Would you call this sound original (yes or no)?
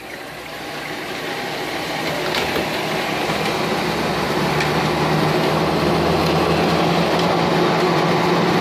yes